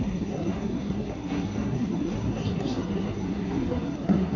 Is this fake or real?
fake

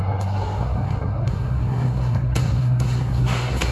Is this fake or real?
fake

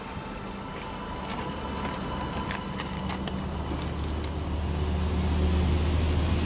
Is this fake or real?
real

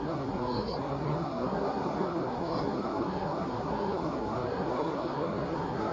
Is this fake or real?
fake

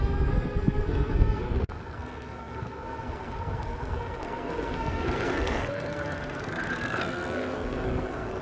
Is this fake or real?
fake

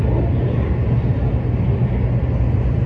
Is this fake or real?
real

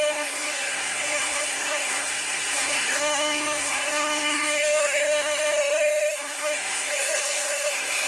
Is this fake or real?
fake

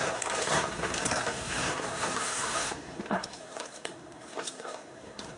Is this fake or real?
fake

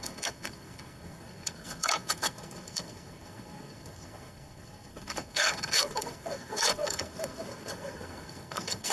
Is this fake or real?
fake